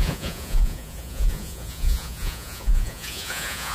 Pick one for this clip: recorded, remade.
remade